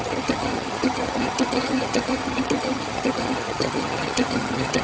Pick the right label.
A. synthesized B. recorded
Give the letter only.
A